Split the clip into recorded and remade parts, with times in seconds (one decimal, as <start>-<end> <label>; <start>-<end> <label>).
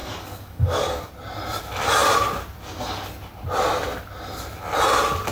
0.0-1.1 remade; 1.1-5.3 recorded